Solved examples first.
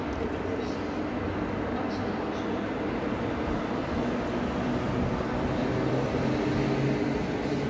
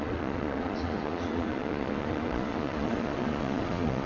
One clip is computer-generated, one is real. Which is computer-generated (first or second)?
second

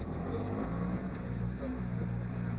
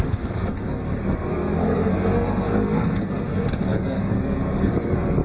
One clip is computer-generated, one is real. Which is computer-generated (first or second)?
second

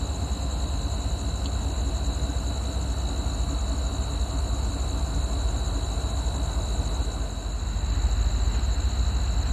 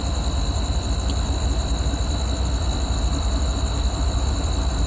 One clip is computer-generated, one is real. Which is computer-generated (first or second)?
second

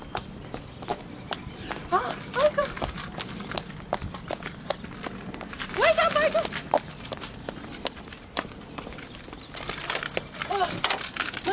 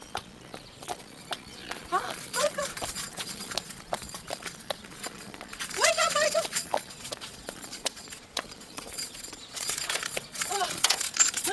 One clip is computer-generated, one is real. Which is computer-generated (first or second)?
second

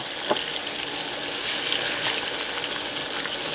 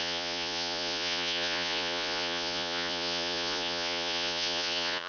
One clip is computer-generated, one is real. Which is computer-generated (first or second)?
second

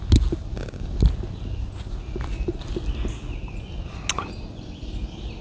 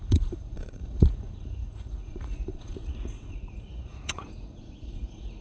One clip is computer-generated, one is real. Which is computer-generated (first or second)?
second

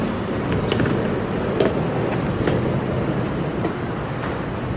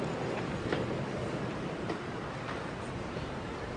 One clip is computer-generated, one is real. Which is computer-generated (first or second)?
second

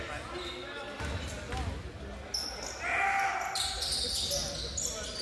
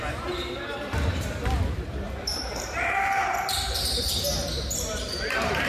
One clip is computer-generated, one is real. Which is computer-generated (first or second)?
second